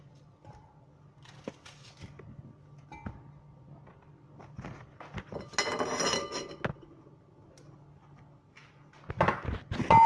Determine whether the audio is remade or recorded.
recorded